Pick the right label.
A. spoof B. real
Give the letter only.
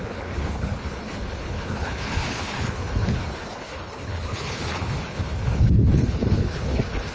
A